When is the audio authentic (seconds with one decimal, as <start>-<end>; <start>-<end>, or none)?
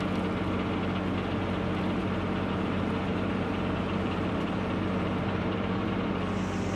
0.0-2.0; 6.1-6.8